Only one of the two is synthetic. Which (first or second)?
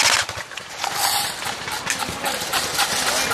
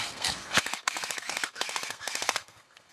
second